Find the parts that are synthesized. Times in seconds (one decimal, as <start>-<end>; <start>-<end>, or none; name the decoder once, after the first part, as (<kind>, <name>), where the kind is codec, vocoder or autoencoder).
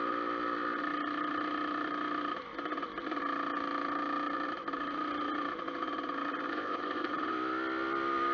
6.5-7.1 (codec, ZipCodec)